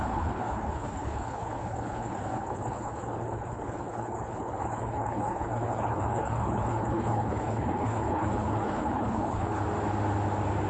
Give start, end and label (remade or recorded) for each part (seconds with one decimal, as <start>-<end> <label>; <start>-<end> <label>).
0.0-9.6 remade; 9.6-10.7 recorded